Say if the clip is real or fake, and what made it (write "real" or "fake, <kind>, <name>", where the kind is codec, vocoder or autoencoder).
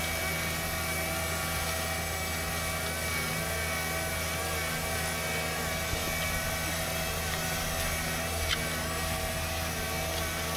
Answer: real